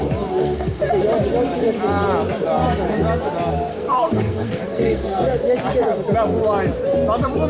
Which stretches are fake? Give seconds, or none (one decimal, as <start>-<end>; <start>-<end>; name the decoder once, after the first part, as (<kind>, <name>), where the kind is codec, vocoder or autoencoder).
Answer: 0.4-1.0 (codec, SNAC); 3.7-5.4